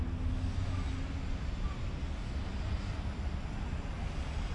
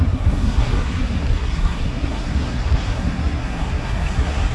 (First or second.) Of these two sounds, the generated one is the second